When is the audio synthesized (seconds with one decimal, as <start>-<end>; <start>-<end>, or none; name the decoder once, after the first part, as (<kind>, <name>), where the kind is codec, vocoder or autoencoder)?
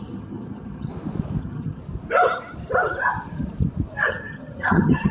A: 0.0-0.9 (vocoder, HiFi-GAN); 1.4-1.8; 4.1-5.1